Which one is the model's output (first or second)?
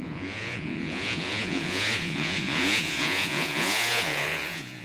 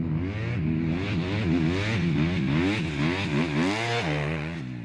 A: first